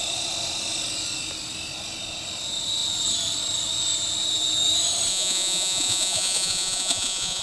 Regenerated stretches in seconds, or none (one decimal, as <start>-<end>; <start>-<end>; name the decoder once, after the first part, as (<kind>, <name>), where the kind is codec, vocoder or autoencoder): 5.1-7.4 (vocoder, Vocos)